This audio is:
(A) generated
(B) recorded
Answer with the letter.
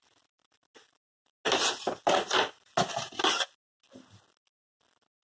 B